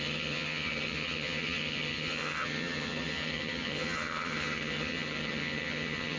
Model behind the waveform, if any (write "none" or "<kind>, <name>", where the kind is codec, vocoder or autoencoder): vocoder, HiFi-GAN